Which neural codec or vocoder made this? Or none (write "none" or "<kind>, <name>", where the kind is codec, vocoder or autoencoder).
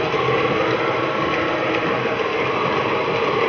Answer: none